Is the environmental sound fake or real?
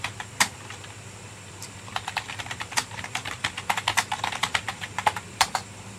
fake